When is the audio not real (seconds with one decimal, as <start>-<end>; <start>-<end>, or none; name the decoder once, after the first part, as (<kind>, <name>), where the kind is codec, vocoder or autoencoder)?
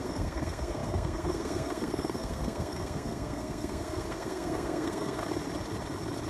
0.0-5.2 (codec, SNAC)